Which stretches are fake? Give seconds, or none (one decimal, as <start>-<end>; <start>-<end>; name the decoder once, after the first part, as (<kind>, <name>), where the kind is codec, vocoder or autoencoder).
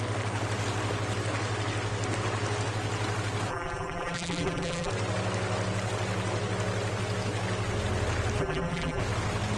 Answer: 3.5-4.9 (vocoder, BigVGAN v2); 8.4-9.0